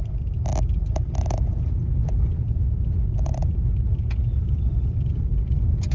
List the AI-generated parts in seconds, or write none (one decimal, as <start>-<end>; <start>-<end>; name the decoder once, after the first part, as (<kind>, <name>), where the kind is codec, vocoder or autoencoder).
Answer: none